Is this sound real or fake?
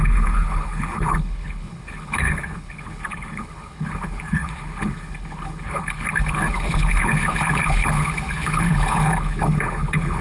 fake